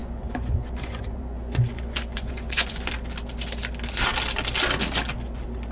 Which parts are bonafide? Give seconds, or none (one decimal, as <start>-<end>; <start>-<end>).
2.9-5.7

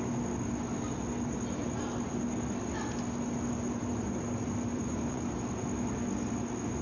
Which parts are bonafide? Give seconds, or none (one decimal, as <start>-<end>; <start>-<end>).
0.0-4.7; 5.3-6.8

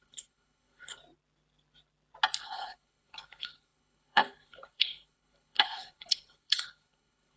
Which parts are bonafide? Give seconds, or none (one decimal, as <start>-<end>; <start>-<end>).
1.0-2.4

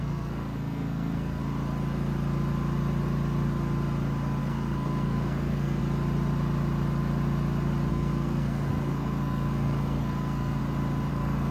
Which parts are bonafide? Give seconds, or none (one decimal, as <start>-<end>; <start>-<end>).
1.4-4.4; 5.8-7.9; 10.6-11.1

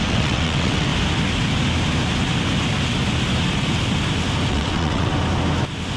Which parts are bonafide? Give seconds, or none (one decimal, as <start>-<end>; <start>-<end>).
0.9-4.5; 5.1-6.0

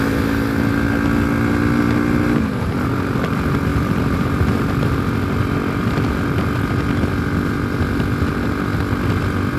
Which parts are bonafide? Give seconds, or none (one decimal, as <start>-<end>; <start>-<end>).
0.0-3.7; 4.9-9.6

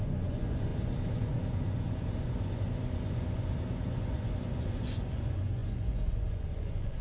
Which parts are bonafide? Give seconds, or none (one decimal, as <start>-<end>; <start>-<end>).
none

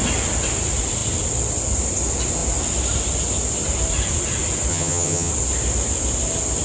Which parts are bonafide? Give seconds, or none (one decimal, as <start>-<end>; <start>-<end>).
0.0-4.7; 5.3-6.6